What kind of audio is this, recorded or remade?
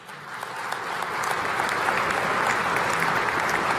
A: recorded